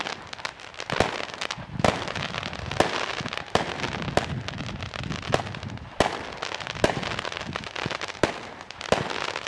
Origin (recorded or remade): recorded